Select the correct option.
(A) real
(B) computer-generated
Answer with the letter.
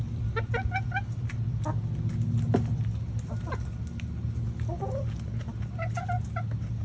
A